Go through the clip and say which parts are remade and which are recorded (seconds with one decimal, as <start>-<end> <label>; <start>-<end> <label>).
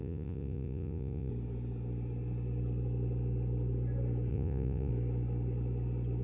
0.0-1.3 remade; 1.3-4.3 recorded; 4.3-4.9 remade; 4.9-6.2 recorded